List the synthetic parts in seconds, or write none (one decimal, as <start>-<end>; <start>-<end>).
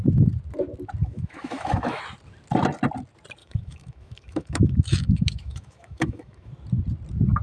1.0-2.0; 3.4-6.5